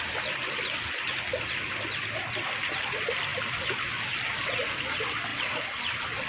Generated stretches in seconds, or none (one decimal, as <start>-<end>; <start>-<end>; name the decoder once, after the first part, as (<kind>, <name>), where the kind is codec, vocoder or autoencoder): none